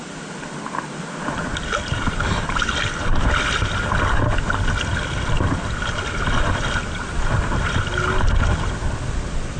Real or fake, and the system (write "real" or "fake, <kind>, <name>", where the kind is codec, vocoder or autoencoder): real